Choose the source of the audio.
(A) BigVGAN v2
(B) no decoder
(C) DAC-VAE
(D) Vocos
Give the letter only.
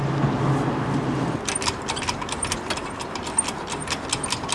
B